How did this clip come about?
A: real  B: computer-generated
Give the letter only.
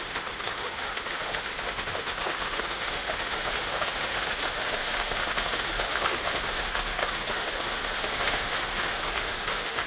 B